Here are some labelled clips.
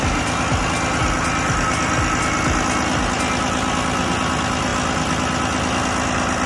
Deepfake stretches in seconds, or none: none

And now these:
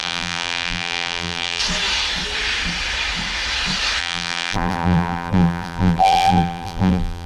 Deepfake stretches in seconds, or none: 0.0-1.6 (vocoder, BigVGAN v2); 4.0-7.3